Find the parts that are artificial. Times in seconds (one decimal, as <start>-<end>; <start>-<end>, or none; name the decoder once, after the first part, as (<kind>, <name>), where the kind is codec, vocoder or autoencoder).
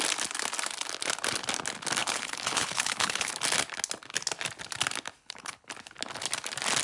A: 2.0-3.3 (codec, HILCodec); 5.2-5.7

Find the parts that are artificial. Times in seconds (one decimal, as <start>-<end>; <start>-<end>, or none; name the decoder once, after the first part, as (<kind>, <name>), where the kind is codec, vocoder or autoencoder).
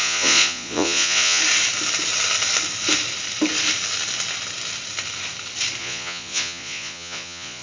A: 0.0-1.4 (vocoder, Vocos); 5.8-7.6